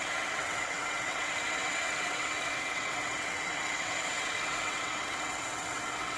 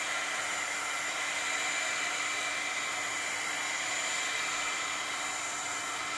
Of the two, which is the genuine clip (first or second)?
second